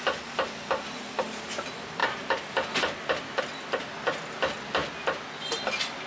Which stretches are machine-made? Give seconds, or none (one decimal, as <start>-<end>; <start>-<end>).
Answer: none